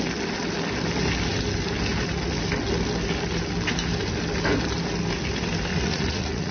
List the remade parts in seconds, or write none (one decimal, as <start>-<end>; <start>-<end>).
5.7-6.5